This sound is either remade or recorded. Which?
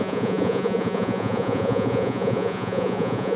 remade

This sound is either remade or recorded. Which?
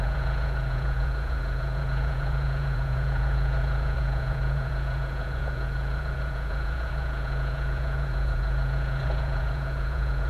remade